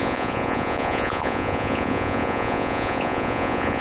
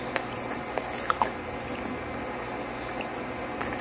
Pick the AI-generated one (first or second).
first